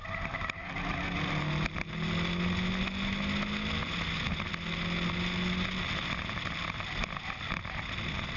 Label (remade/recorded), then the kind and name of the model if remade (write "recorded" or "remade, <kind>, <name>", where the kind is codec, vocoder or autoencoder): recorded